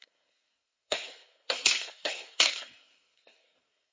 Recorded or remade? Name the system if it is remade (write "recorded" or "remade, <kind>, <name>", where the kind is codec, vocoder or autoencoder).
remade, codec, SNAC